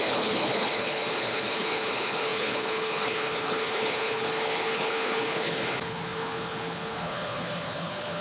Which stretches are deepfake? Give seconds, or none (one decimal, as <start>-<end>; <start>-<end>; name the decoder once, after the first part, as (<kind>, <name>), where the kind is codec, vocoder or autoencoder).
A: 0.0-8.2 (codec, HILCodec)